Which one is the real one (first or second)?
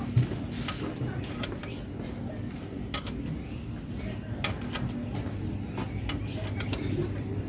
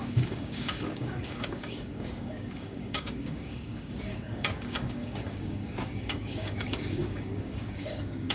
first